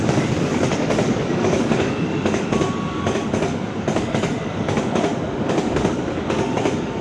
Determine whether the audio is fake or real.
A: fake